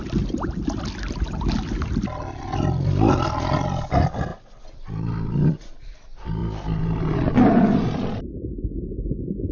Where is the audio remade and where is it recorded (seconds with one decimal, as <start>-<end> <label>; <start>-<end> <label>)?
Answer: 0.0-9.5 recorded